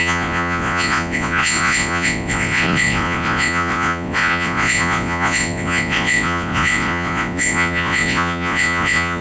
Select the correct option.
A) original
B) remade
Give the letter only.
B